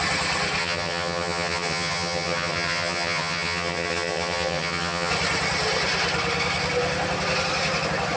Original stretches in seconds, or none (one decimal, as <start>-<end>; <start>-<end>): 0.0-0.6; 5.1-8.2